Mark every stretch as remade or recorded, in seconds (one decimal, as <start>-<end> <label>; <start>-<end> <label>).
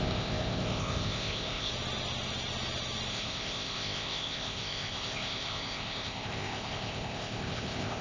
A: 0.0-1.7 remade; 1.7-3.1 recorded; 3.1-8.0 remade